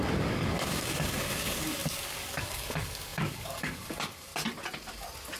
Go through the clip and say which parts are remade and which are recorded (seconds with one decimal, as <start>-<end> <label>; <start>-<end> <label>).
0.0-4.3 remade; 4.3-5.4 recorded